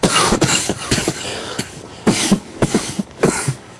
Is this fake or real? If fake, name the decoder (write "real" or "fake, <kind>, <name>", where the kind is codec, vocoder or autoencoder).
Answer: fake, codec, DAC